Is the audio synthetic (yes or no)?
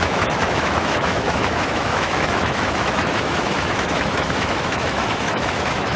yes